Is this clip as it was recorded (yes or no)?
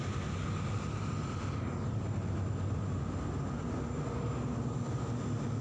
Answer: yes